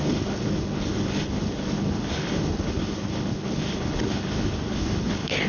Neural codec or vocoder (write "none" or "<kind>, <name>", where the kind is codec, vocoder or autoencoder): codec, HILCodec